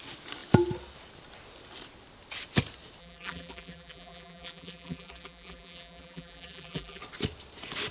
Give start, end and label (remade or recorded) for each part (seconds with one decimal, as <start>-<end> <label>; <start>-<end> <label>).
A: 0.0-3.0 recorded; 3.0-7.0 remade; 7.0-7.9 recorded